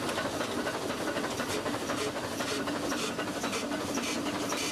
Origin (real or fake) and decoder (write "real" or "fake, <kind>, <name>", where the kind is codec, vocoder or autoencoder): real